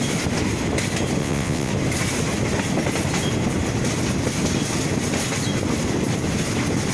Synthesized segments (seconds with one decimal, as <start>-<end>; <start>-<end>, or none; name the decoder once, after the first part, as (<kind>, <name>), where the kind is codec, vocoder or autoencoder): 1.2-1.7 (vocoder, WaveNeXt)